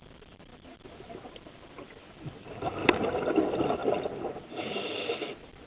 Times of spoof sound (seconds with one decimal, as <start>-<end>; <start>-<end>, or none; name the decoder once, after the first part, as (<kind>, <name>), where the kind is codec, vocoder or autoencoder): none